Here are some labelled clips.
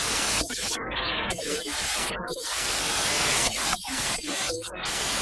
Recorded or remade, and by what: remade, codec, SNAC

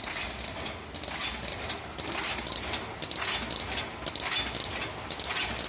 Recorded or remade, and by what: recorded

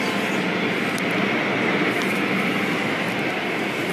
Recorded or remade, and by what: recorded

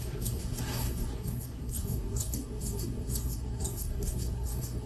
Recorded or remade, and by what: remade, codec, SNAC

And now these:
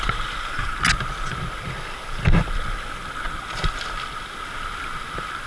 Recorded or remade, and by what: recorded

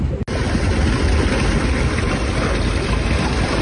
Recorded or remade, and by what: recorded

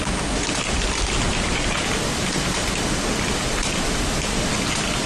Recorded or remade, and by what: recorded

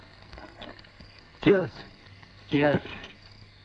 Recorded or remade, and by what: remade, codec, SNAC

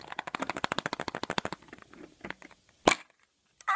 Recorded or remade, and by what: recorded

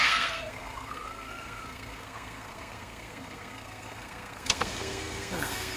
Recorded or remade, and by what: remade, codec, SNAC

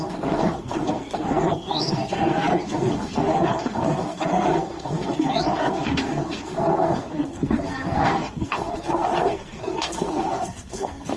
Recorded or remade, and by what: remade, codec, SNAC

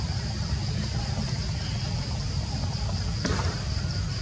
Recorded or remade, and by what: recorded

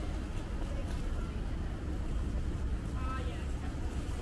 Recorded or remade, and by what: recorded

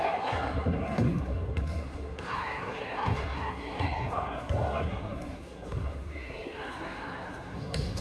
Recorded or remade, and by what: remade, codec, SNAC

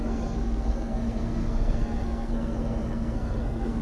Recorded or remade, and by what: remade, codec, SNAC